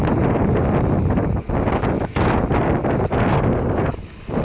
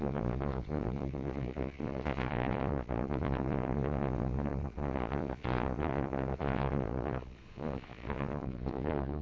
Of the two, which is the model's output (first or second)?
second